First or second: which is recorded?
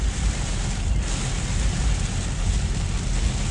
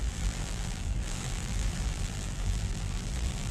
first